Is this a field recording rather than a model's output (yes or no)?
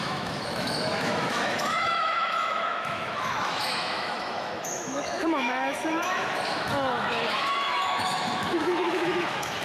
no